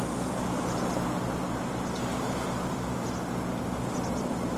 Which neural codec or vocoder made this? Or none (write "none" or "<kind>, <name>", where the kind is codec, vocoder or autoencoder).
none